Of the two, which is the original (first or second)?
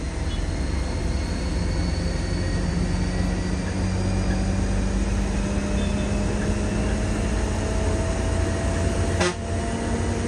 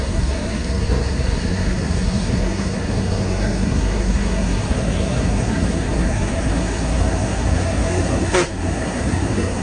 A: first